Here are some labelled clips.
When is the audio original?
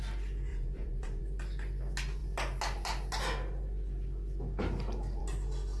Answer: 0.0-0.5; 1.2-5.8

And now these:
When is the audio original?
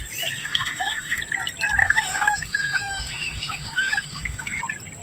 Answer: 0.0-0.4; 1.2-1.8; 4.6-5.0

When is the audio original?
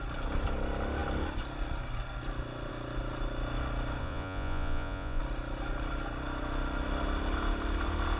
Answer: 0.0-4.0; 5.2-8.2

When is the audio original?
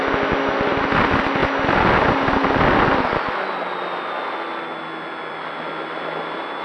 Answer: 0.0-6.6